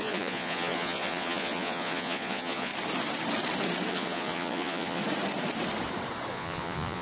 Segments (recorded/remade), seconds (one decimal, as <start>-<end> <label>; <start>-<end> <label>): 0.0-2.7 remade; 2.7-3.9 recorded; 3.9-5.0 remade; 5.0-6.3 recorded; 6.3-7.0 remade

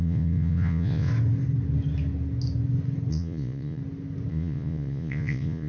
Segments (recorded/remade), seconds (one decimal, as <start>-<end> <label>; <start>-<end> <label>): 0.0-1.1 remade; 1.1-3.1 recorded; 3.1-3.8 remade; 3.8-4.3 recorded; 4.3-5.7 remade

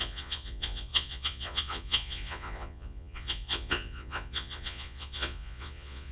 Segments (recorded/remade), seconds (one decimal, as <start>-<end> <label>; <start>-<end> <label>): 0.0-6.1 remade

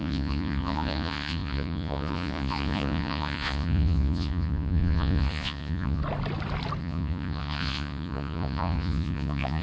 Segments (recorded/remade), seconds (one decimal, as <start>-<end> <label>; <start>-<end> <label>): 0.0-6.0 remade; 6.0-6.8 recorded; 6.8-9.6 remade